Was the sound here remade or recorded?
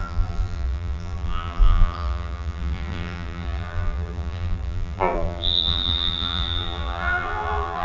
remade